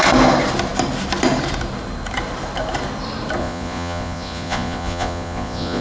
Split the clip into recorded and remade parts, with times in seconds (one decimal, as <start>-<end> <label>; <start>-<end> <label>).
0.0-3.4 recorded; 3.4-5.8 remade